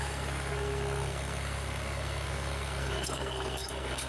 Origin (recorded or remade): remade